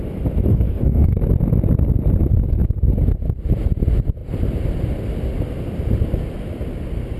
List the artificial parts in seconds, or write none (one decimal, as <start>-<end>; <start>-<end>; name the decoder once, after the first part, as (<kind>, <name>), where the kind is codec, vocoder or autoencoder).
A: 0.5-1.2 (codec, DAC)